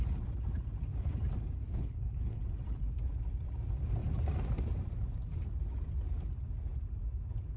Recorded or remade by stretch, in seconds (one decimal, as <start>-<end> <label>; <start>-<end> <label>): 0.0-1.6 recorded; 1.6-2.4 remade; 2.4-7.6 recorded